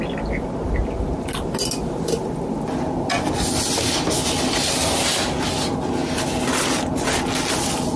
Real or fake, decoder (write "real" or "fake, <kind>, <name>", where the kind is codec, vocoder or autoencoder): real